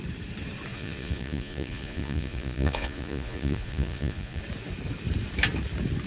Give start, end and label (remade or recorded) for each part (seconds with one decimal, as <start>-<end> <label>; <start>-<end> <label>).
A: 0.0-0.7 recorded; 0.7-4.4 remade; 4.4-6.1 recorded